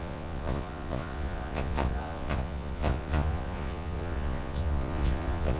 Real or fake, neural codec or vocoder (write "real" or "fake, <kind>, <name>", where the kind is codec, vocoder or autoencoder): fake, vocoder, Vocos